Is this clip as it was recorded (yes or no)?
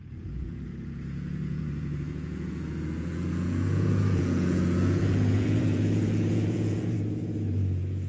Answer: no